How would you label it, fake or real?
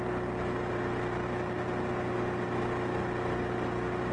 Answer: real